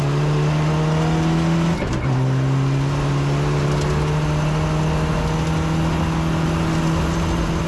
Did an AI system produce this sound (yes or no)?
no